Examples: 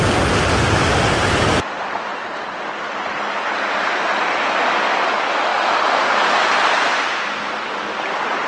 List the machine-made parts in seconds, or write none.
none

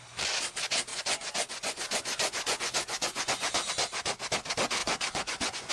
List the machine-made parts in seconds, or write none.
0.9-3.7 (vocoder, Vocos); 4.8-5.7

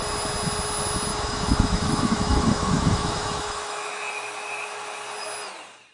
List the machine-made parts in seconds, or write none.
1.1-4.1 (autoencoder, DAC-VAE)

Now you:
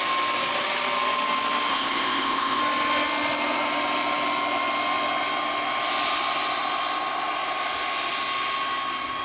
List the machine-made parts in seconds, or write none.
1.7-2.6 (codec, ZipCodec)

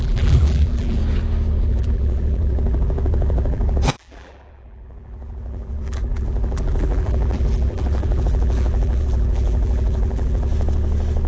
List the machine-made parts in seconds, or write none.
0.0-1.0 (vocoder, BigVGAN v2); 1.6-10.5

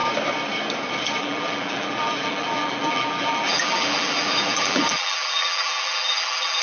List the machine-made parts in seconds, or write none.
1.2-6.6 (vocoder, BigVGAN v2)

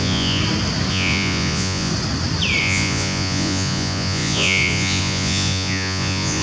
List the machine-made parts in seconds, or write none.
0.0-0.4 (vocoder, Vocos); 0.9-1.9; 2.6-6.4

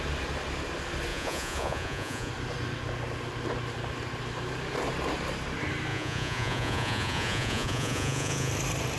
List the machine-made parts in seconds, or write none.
1.1-2.3 (vocoder, Vocos); 5.9-8.5